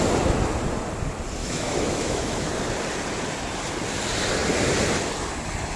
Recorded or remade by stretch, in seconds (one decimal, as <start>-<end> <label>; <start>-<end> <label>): 0.0-1.4 recorded; 1.4-2.5 remade; 2.5-5.8 recorded